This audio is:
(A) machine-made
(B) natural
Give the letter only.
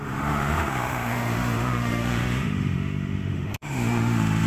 A